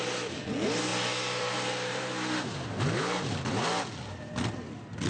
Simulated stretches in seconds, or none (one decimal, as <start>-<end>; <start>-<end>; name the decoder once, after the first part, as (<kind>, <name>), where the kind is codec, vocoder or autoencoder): 0.9-3.8 (vocoder, BigVGAN v2)